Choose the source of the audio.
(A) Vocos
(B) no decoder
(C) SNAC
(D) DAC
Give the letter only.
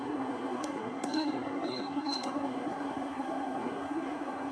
C